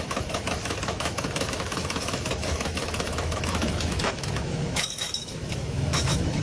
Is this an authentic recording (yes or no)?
no